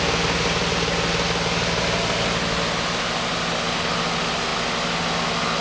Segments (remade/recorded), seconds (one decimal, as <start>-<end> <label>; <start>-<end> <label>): 0.0-5.6 recorded